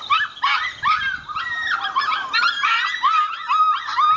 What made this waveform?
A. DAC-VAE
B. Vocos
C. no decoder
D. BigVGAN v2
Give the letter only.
C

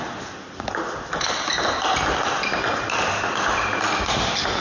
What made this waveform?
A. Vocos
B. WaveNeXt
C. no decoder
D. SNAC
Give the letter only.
C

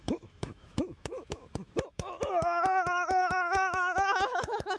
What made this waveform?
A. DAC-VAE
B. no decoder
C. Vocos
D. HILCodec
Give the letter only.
A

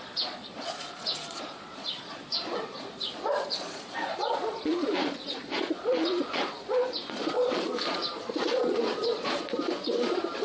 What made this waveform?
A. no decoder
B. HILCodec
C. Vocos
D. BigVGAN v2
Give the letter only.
C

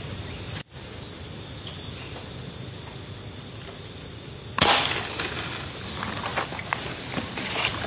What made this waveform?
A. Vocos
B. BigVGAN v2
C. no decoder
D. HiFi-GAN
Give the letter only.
C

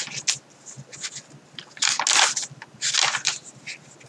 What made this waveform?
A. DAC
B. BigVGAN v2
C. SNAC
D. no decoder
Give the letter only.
D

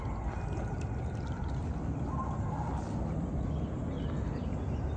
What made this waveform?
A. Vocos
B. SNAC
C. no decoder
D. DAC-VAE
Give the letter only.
C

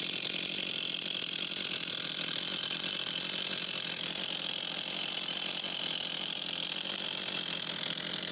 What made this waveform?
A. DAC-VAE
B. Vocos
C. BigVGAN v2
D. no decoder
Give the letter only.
D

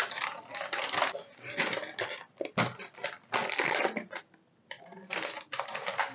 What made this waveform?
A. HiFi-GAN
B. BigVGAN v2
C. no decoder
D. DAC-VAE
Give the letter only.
C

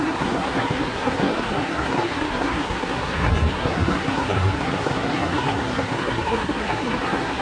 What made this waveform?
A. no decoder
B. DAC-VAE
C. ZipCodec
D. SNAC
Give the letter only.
D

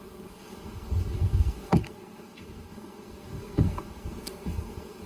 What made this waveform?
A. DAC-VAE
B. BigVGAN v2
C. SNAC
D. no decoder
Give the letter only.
C